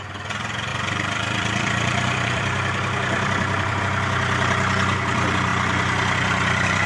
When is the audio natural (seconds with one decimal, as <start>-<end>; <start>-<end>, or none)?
0.0-0.7; 3.8-6.9